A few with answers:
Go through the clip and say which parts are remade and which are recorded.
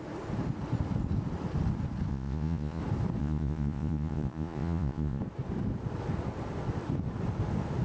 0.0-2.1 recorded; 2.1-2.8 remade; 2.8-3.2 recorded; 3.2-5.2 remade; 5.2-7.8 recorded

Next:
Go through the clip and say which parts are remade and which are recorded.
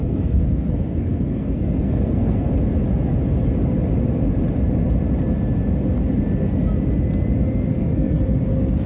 0.0-2.5 remade; 2.5-7.7 recorded; 7.7-8.2 remade; 8.2-8.9 recorded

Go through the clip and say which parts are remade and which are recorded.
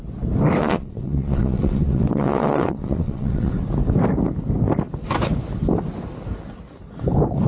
0.0-0.6 recorded; 0.6-3.5 remade; 3.5-7.5 recorded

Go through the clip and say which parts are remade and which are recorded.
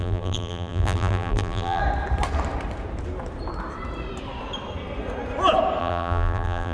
0.0-1.8 remade; 1.8-5.8 recorded; 5.8-6.7 remade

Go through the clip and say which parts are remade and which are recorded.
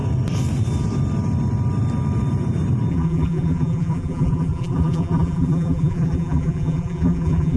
0.0-2.9 recorded; 2.9-7.6 remade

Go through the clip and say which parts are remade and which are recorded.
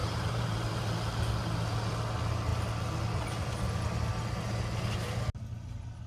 0.0-0.9 remade; 0.9-6.1 recorded